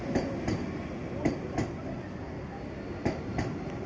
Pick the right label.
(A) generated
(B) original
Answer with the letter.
B